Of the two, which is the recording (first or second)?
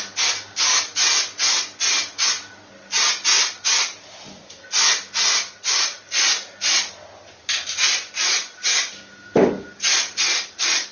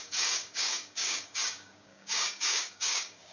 first